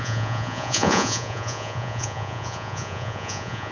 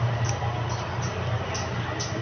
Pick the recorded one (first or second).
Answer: second